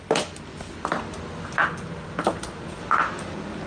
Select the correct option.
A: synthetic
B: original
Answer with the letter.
B